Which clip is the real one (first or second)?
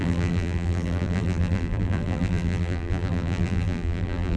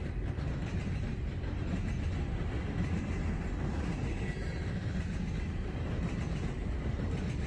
second